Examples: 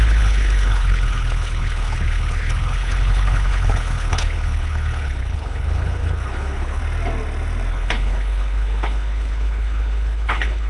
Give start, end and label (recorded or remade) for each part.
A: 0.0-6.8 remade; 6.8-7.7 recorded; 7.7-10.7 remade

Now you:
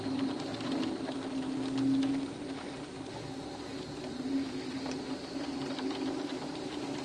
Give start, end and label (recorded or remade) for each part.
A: 0.0-0.5 remade; 0.5-4.7 recorded; 4.7-7.0 remade

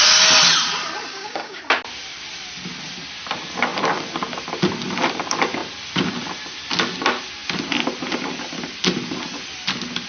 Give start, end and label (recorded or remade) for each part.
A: 0.0-1.1 recorded; 1.1-1.6 remade; 1.6-10.1 recorded

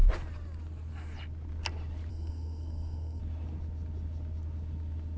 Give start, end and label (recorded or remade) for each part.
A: 0.0-2.1 recorded; 2.1-3.2 remade; 3.2-5.2 recorded

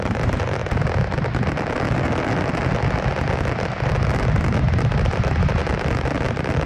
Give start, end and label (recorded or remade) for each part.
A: 0.0-0.6 remade; 0.6-4.6 recorded; 4.6-5.6 remade; 5.6-6.7 recorded

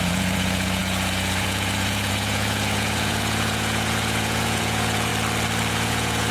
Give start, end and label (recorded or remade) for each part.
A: 0.0-5.1 remade; 5.1-5.7 recorded; 5.7-6.3 remade

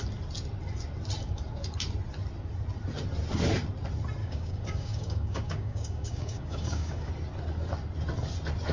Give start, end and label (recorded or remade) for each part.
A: 0.0-4.2 recorded; 4.2-7.1 remade; 7.1-8.7 recorded

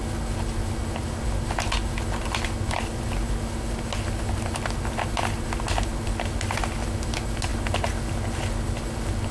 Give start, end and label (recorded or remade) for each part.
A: 0.0-9.3 recorded